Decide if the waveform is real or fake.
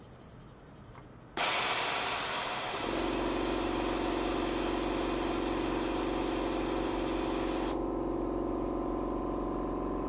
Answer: real